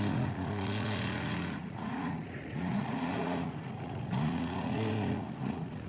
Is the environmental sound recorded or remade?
remade